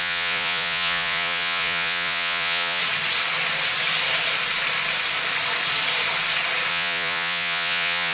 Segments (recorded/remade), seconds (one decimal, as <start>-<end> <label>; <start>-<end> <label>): 0.0-2.8 remade; 2.8-6.7 recorded; 6.7-8.1 remade